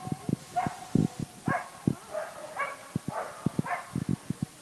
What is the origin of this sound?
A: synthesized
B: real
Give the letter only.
B